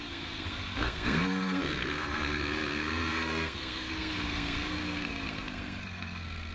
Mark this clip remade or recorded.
remade